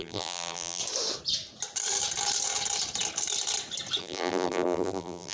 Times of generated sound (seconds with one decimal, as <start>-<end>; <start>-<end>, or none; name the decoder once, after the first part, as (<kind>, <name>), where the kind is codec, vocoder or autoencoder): 0.0-0.8 (vocoder, BigVGAN v2); 4.0-5.3